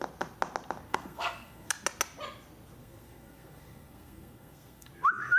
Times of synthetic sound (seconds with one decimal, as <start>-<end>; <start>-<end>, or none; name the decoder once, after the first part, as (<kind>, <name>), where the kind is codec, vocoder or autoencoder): 0.9-1.7 (codec, SNAC); 2.8-4.9